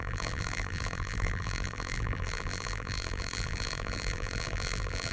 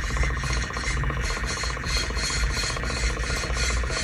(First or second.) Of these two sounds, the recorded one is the second